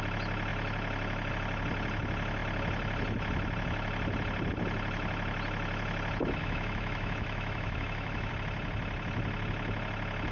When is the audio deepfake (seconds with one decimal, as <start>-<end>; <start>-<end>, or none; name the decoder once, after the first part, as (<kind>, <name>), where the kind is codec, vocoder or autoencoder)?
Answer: 6.4-8.3 (autoencoder, DAC-VAE)

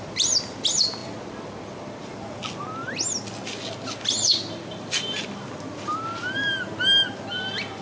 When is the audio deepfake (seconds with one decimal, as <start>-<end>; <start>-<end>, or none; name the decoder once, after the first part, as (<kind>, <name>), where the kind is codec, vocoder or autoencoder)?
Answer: none

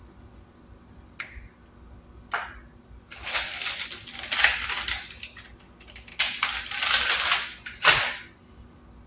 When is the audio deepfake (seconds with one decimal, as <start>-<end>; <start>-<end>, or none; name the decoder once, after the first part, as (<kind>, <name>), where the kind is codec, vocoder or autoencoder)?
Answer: none

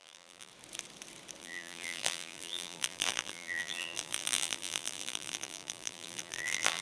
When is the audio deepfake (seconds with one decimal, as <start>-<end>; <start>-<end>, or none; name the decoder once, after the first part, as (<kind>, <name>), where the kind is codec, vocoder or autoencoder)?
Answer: 0.0-0.5 (vocoder, BigVGAN v2); 1.4-6.8

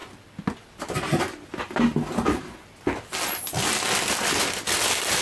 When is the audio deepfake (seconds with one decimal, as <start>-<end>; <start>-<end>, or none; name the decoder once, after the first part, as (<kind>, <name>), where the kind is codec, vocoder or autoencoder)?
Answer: none

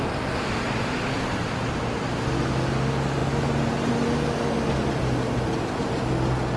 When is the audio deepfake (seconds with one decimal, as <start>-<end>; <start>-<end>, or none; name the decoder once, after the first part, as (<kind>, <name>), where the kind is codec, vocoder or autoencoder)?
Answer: none

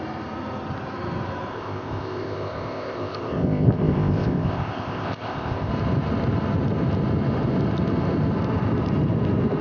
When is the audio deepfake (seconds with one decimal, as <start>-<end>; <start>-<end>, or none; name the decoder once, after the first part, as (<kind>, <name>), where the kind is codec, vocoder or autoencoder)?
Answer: 1.5-5.7 (codec, ZipCodec)

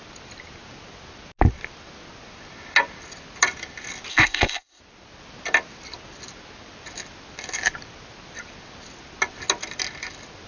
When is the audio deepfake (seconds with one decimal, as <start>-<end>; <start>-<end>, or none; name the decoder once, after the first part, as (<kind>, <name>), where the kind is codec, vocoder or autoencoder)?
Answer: 4.1-4.8 (codec, ZipCodec)